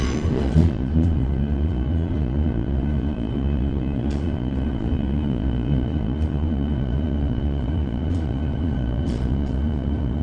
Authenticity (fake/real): fake